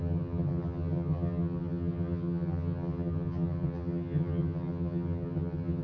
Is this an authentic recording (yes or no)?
no